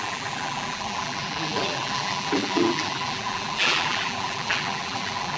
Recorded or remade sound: remade